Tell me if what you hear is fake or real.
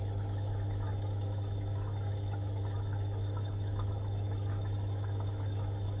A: fake